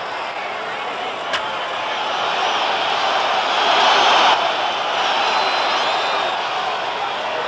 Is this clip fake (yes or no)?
no